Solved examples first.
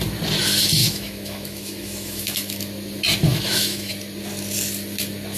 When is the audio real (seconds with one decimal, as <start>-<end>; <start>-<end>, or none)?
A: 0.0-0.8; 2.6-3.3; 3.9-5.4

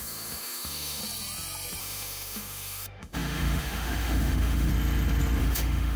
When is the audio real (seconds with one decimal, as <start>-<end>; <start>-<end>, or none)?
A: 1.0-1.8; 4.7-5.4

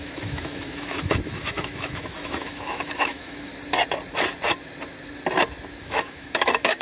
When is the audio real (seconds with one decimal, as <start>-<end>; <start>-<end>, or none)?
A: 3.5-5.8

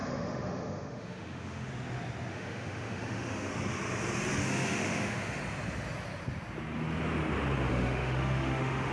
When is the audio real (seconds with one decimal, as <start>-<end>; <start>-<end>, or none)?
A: 1.7-2.3; 3.5-4.4; 5.4-7.7

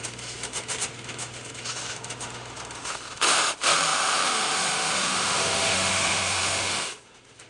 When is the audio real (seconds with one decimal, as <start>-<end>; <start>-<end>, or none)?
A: none

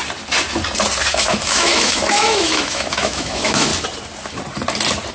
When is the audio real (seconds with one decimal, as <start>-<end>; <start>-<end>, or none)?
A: 0.0-1.1; 3.7-5.1

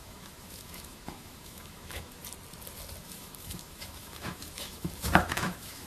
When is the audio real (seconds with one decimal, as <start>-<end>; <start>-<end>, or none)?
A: 2.2-3.0

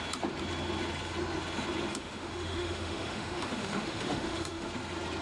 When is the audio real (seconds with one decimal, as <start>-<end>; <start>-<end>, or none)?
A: 0.0-1.9; 4.7-5.2